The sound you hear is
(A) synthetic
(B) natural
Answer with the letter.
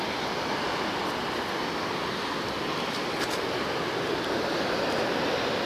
B